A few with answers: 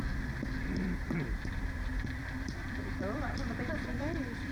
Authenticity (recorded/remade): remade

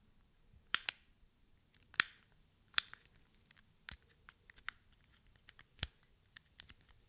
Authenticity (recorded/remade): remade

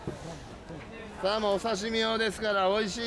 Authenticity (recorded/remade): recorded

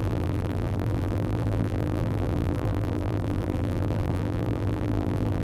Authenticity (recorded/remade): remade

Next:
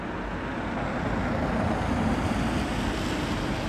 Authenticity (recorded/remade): recorded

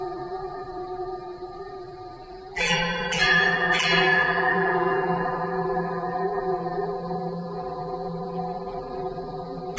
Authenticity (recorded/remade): remade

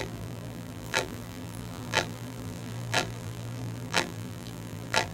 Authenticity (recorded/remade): remade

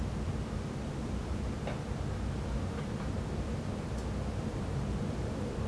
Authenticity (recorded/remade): remade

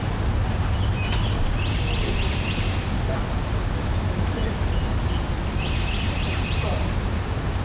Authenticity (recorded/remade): recorded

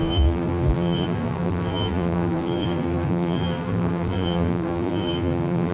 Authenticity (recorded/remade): remade